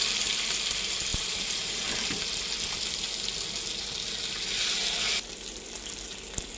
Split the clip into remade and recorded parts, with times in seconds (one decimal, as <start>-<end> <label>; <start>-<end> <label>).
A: 0.0-1.1 recorded; 1.1-1.8 remade; 1.8-6.6 recorded